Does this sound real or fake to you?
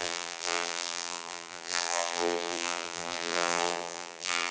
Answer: fake